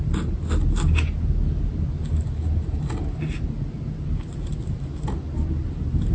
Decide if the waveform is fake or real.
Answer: real